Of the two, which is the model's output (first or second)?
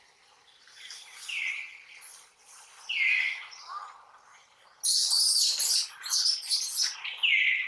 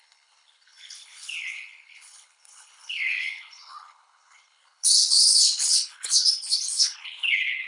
second